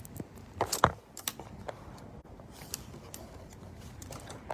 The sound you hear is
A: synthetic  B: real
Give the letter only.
B